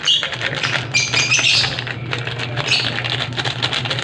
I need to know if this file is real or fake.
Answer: real